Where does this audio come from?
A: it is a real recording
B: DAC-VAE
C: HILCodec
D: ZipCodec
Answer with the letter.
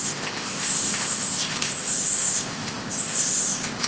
D